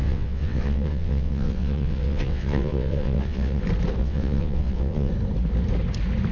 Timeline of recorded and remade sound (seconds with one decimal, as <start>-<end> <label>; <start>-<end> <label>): 0.0-3.6 remade; 3.6-4.0 recorded; 4.0-5.1 remade; 5.1-6.3 recorded